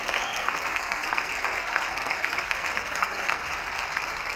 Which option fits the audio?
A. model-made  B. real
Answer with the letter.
A